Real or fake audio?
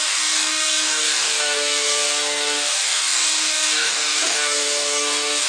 fake